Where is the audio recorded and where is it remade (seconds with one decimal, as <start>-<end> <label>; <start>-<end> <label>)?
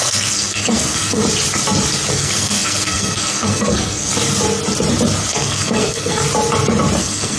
0.0-1.2 remade; 1.2-2.1 recorded; 2.1-4.1 remade; 4.1-5.3 recorded; 5.3-6.2 remade; 6.2-7.0 recorded; 7.0-7.4 remade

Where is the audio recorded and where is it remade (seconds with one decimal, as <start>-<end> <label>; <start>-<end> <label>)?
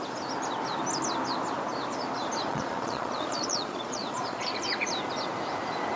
0.0-2.5 recorded; 2.5-4.9 remade; 4.9-6.0 recorded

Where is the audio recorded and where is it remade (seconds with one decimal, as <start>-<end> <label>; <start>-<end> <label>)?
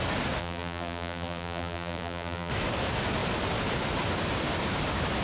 0.0-0.4 recorded; 0.4-2.5 remade; 2.5-5.2 recorded